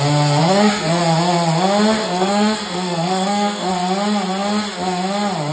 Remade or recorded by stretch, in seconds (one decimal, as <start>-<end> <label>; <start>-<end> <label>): 0.0-0.4 recorded; 0.4-1.0 remade; 1.0-2.0 recorded; 2.0-3.7 remade; 3.7-5.5 recorded